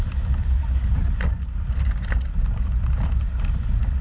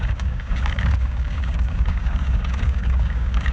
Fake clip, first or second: second